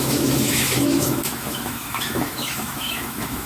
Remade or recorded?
remade